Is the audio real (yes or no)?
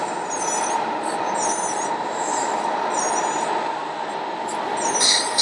yes